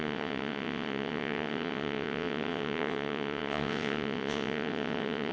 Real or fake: fake